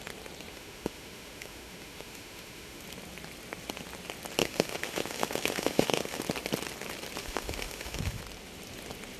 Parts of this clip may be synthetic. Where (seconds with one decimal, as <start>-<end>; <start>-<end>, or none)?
0.5-2.8; 4.4-6.2; 7.2-8.2